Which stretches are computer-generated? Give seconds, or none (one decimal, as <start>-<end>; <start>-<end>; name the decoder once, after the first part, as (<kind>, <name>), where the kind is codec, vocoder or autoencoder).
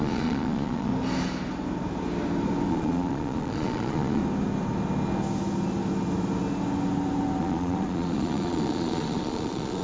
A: 0.0-0.9 (vocoder, Vocos); 2.7-4.2; 7.4-9.8